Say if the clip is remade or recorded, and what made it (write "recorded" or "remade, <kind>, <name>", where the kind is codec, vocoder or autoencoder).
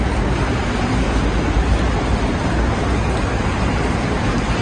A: recorded